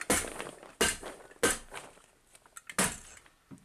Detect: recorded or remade recorded